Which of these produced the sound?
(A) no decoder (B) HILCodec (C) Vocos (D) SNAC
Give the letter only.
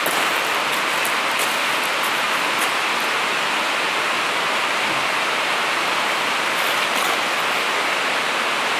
A